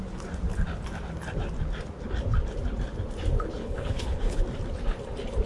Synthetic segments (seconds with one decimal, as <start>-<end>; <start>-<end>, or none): 3.6-4.4